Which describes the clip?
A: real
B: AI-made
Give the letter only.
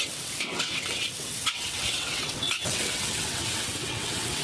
B